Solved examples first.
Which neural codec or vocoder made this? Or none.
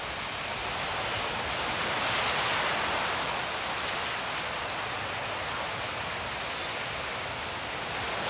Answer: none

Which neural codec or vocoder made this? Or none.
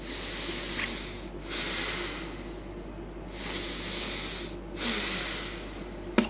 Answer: none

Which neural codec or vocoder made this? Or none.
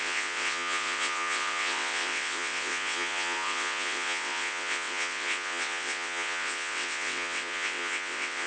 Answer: vocoder, WaveNeXt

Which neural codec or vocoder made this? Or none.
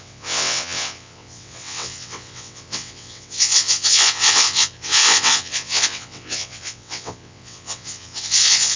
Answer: vocoder, WaveNeXt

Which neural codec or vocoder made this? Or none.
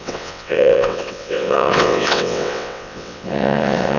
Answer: vocoder, WaveNeXt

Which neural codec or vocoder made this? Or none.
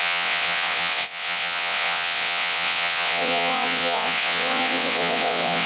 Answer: vocoder, WaveNeXt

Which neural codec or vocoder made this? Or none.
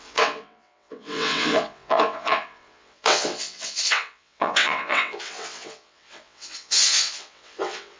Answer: vocoder, WaveNeXt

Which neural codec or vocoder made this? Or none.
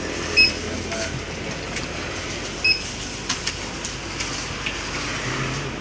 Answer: none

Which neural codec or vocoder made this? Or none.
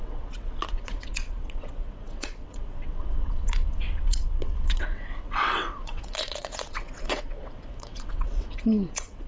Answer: vocoder, WaveNeXt